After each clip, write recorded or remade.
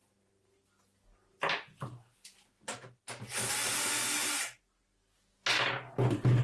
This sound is recorded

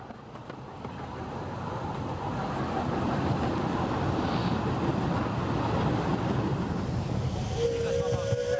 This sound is recorded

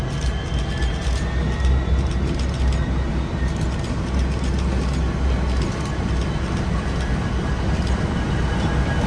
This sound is recorded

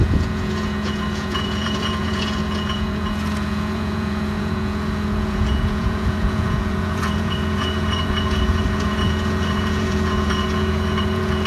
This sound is remade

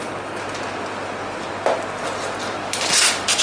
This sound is recorded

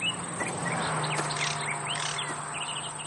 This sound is recorded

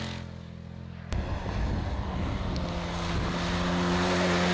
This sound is recorded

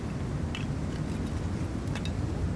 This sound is recorded